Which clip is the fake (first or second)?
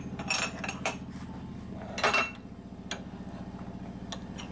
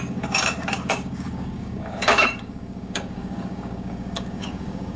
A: second